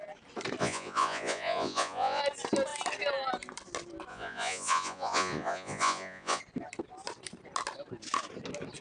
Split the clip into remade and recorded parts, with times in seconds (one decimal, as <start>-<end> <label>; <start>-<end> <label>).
0.0-0.6 recorded; 0.6-2.2 remade; 2.2-4.1 recorded; 4.1-6.4 remade; 6.4-8.8 recorded

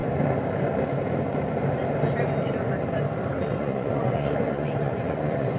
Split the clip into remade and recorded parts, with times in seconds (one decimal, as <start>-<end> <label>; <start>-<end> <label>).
0.0-3.4 recorded; 3.4-5.6 remade

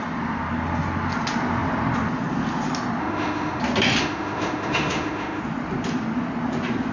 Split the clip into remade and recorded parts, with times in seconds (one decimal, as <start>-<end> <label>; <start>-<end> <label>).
0.0-3.0 recorded; 3.0-3.6 remade; 3.6-4.0 recorded; 4.0-5.4 remade; 5.4-6.9 recorded

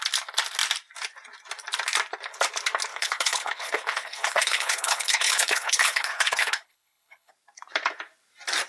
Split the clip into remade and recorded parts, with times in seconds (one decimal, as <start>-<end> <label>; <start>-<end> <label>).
0.0-2.9 recorded; 2.9-7.3 remade; 7.3-8.7 recorded

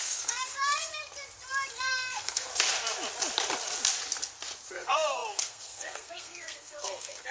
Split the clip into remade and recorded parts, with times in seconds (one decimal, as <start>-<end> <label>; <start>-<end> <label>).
0.0-1.1 remade; 1.1-1.7 recorded; 1.7-2.5 remade; 2.5-4.7 recorded; 4.7-7.3 remade

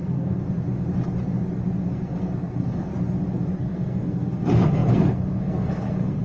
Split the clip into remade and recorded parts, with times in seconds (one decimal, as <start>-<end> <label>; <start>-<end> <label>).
0.0-0.4 remade; 0.4-1.9 recorded; 1.9-2.9 remade; 2.9-3.6 recorded; 3.6-6.2 remade

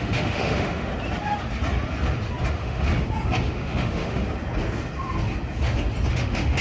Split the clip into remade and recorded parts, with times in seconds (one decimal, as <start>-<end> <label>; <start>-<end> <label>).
0.0-0.9 remade; 0.9-2.5 recorded; 2.5-2.9 remade; 2.9-3.5 recorded; 3.5-4.2 remade; 4.2-6.1 recorded; 6.1-6.6 remade